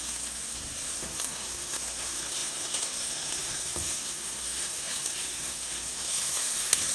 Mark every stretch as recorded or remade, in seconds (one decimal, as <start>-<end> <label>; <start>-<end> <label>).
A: 0.0-6.9 remade